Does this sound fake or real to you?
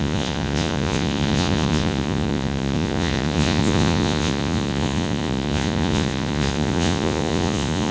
fake